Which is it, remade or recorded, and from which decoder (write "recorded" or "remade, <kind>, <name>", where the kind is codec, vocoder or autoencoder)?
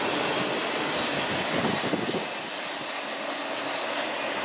recorded